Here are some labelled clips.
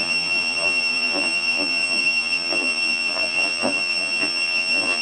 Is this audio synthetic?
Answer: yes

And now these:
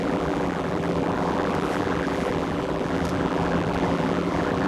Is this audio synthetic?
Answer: yes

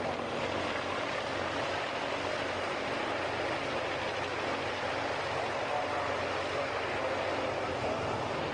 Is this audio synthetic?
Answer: no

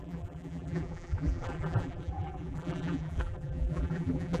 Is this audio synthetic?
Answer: yes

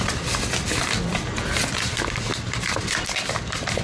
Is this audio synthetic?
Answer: yes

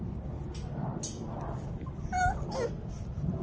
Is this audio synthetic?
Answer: no